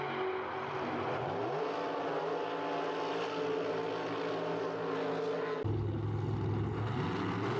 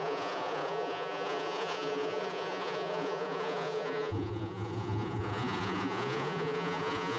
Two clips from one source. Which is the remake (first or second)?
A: second